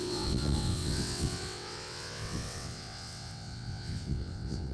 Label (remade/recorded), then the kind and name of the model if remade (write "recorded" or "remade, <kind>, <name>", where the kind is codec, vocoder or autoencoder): remade, vocoder, WaveNeXt